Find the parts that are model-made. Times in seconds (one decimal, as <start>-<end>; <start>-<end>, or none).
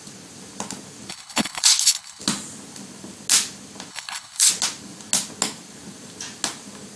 1.1-2.2; 3.9-4.5